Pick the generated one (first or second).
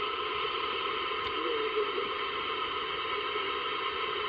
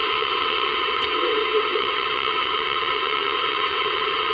second